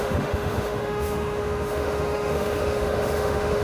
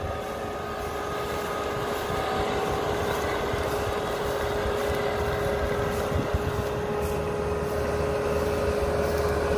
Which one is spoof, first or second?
first